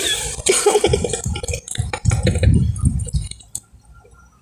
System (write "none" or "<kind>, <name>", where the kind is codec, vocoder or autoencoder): vocoder, BigVGAN v2